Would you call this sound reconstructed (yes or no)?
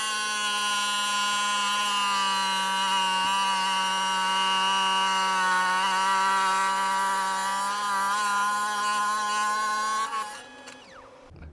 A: no